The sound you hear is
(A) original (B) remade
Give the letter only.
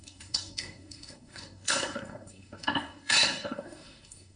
B